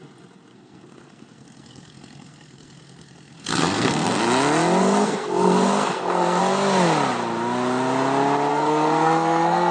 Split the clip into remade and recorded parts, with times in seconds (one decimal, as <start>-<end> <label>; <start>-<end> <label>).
0.0-0.5 recorded; 0.5-4.2 remade; 4.2-4.8 recorded; 4.8-6.4 remade; 6.4-8.5 recorded; 8.5-9.7 remade